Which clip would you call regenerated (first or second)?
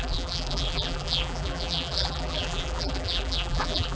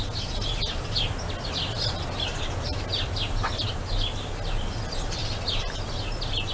first